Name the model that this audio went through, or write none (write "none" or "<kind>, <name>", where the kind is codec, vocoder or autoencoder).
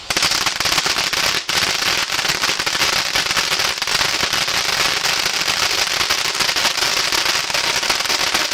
none